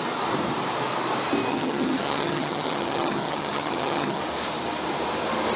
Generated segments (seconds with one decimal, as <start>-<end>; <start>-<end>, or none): 1.5-4.2

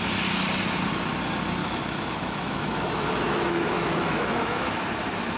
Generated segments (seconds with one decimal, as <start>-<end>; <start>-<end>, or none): 1.6-4.8

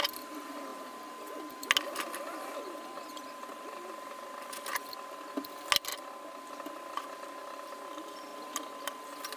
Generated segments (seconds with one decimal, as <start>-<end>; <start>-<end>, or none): none

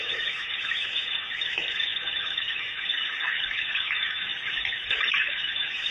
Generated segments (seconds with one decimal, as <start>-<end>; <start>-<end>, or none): 0.0-2.9; 3.5-4.3; 5.2-5.9

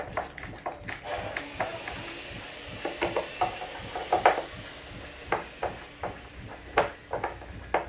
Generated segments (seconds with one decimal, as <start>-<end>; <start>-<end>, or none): none

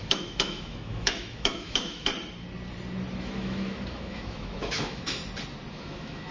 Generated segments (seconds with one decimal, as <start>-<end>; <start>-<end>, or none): 0.0-2.1; 3.2-5.2; 5.7-6.3

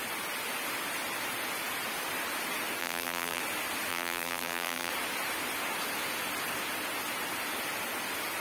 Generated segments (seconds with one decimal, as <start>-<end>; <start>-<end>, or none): 2.8-3.4; 3.9-4.9